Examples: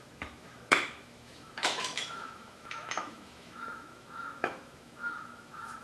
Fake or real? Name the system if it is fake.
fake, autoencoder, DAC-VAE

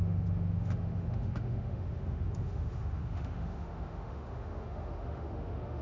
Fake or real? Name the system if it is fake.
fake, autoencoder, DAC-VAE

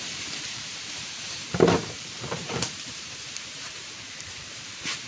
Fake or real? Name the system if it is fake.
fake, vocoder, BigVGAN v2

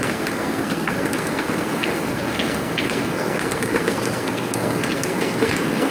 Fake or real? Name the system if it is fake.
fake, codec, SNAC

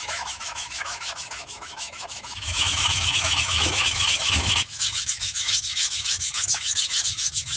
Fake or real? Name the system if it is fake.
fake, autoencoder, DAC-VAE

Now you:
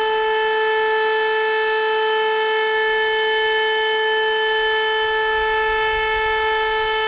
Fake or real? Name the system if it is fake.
real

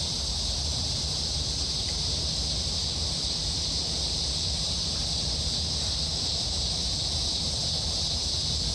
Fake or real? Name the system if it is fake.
fake, vocoder, BigVGAN v2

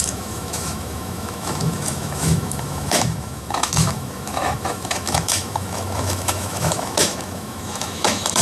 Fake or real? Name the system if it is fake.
fake, autoencoder, DAC-VAE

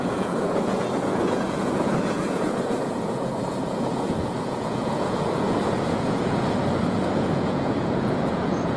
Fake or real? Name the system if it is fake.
fake, vocoder, Vocos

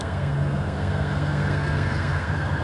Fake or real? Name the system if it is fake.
fake, codec, SNAC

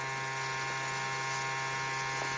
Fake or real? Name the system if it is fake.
real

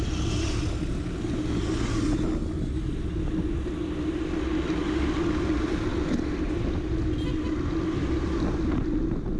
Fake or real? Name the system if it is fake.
real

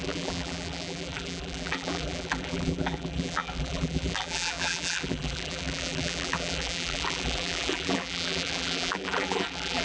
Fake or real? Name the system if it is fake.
fake, vocoder, BigVGAN v2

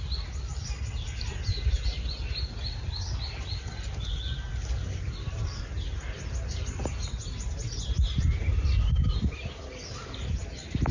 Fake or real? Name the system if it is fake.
real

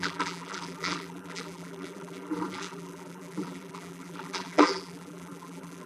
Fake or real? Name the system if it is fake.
fake, vocoder, BigVGAN v2